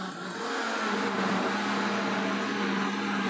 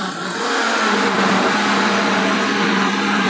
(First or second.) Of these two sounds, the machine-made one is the second